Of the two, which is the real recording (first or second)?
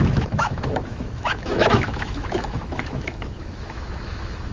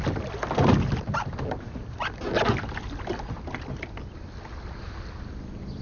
second